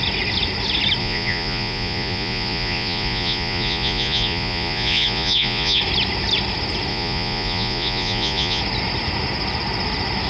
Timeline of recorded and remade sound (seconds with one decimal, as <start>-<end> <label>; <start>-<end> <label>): 0.0-1.0 recorded; 1.0-5.8 remade; 5.8-6.9 recorded; 6.9-8.6 remade; 8.6-10.3 recorded